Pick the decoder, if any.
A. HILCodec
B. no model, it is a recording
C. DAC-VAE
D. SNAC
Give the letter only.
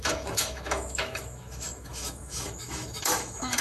C